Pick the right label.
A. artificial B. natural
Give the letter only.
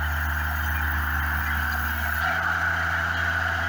B